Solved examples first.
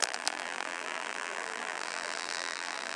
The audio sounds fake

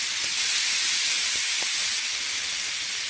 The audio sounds real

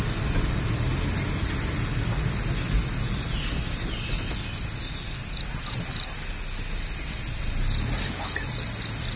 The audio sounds real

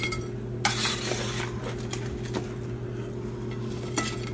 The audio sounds real